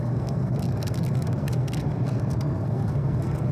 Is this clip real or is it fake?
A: fake